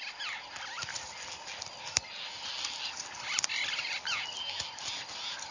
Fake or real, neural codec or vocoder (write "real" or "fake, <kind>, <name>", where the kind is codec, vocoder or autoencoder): real